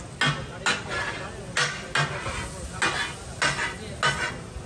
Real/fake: real